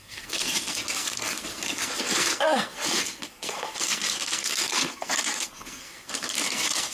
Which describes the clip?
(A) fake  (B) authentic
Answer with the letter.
A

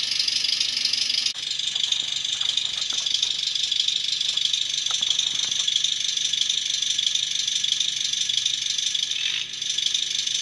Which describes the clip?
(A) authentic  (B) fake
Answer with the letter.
A